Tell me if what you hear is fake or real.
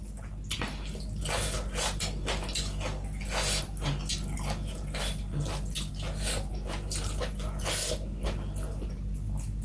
real